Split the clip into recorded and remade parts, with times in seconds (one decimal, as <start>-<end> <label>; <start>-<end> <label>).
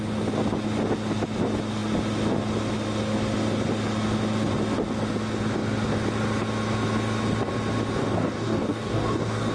0.0-8.0 recorded; 8.0-9.5 remade